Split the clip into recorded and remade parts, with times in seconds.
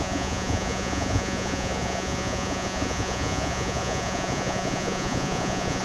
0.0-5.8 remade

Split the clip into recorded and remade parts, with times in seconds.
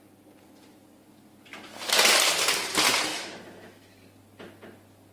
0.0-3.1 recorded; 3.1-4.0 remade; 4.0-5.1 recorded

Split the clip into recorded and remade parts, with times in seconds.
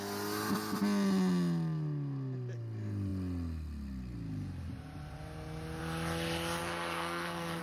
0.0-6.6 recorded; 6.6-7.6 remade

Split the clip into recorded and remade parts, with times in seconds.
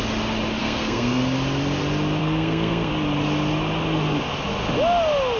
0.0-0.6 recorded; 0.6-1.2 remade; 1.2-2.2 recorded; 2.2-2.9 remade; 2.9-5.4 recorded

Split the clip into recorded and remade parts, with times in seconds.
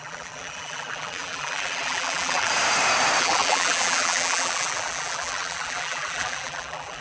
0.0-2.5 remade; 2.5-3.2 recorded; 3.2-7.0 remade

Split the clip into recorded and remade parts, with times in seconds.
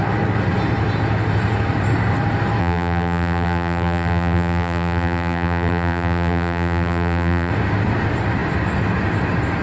0.0-2.6 recorded; 2.6-7.5 remade; 7.5-9.6 recorded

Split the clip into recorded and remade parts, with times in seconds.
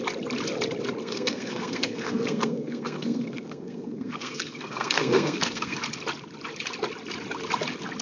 0.0-1.0 recorded; 1.0-5.8 remade; 5.8-8.0 recorded